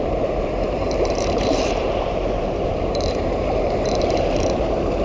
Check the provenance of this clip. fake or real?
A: fake